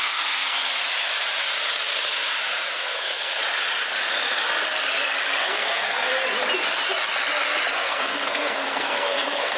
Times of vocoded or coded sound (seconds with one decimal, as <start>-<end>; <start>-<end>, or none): 0.0-0.7; 2.7-3.4; 5.4-6.1; 7.7-9.6